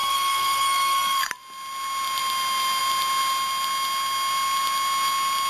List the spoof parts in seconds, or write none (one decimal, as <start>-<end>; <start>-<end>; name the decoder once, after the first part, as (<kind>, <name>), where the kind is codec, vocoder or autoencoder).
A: 0.0-1.3 (codec, SNAC)